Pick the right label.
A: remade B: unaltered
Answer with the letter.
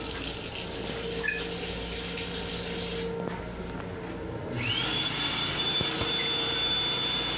B